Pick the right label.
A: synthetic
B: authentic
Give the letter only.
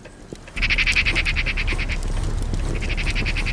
B